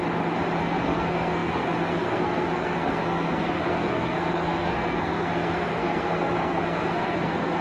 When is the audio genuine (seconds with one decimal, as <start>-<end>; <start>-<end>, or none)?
0.0-0.6